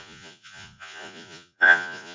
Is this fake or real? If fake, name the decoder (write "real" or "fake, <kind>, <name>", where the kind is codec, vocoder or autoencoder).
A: fake, vocoder, Vocos